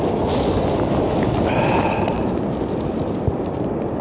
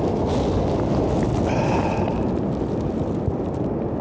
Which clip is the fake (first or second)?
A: first